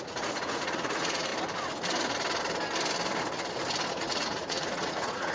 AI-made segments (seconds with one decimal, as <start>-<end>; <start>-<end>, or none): 0.0-1.3; 3.9-5.3